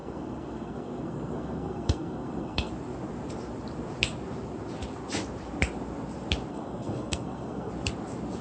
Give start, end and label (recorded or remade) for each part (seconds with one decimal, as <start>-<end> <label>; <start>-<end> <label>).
0.0-2.7 remade; 2.7-6.5 recorded; 6.5-7.7 remade; 7.7-8.4 recorded